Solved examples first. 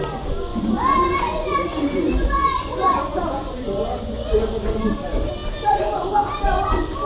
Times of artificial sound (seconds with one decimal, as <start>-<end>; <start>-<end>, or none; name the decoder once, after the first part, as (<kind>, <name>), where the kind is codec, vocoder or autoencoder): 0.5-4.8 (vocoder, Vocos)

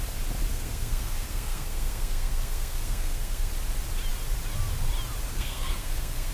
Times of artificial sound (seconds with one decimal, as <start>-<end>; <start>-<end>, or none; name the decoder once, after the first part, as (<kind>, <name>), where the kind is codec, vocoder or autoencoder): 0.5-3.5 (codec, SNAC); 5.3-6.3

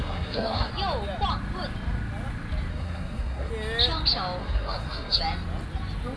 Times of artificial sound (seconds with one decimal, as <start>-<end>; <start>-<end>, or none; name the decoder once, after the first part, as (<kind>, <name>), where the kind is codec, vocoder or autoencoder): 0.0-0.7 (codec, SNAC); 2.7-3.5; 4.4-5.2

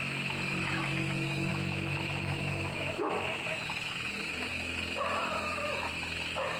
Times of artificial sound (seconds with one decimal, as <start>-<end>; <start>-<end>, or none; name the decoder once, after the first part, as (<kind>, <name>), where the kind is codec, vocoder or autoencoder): 0.0-6.6 (autoencoder, DAC-VAE)

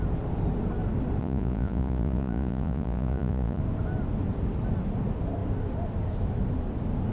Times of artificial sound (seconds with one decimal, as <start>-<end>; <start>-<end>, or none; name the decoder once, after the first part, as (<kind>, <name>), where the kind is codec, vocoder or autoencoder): 1.2-3.6 (vocoder, Vocos)

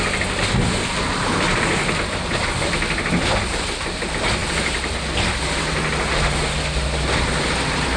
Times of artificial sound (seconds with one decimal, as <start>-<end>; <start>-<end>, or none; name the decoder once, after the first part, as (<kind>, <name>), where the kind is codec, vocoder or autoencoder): none